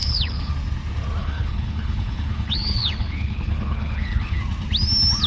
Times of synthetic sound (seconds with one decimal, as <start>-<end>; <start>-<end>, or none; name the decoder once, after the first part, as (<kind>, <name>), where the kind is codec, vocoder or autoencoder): 0.0-0.5 (codec, HILCodec); 1.2-4.4